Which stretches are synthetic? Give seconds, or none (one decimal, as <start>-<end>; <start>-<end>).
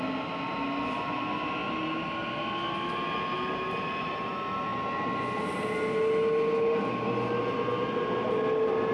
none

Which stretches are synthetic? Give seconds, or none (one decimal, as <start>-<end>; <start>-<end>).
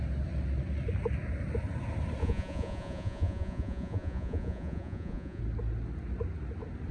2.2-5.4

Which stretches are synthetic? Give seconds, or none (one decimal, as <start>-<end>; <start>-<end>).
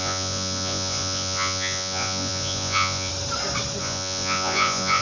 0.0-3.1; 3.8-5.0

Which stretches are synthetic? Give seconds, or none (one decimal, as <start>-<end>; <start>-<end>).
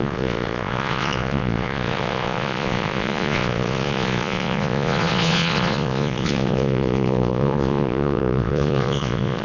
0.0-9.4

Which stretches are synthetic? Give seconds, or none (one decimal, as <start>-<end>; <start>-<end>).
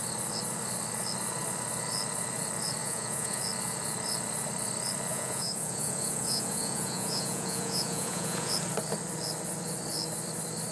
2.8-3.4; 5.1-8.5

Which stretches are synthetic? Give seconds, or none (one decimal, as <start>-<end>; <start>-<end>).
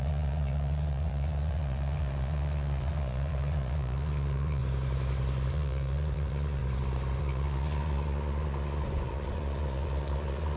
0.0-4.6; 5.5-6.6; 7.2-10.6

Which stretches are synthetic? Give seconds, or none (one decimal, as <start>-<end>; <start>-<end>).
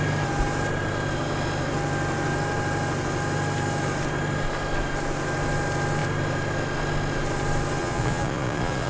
7.8-8.9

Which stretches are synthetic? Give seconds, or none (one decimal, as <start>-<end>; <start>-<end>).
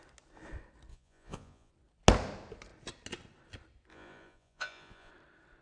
0.9-1.7; 3.9-5.1